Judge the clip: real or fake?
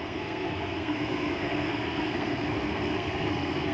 fake